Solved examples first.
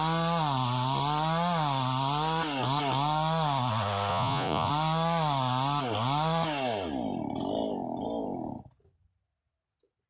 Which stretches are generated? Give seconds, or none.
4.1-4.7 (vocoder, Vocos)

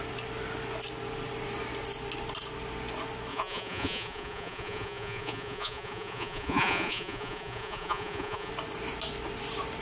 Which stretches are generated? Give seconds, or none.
3.3-8.5 (vocoder, Vocos)

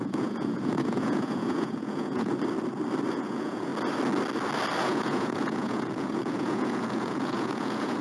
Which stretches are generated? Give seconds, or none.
0.0-2.3 (vocoder, Vocos); 3.1-3.7; 4.8-8.0

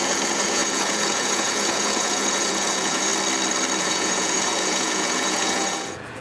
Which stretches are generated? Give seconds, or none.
0.0-3.1 (vocoder, Vocos); 3.8-6.2

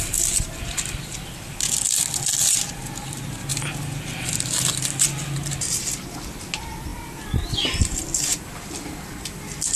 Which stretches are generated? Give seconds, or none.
none